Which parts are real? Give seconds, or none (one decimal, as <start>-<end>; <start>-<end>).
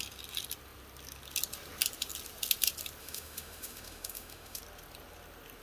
0.0-3.0; 4.6-5.6